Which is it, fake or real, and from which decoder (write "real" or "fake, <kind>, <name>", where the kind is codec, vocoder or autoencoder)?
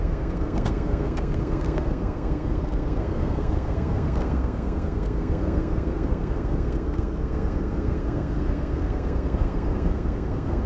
fake, codec, SNAC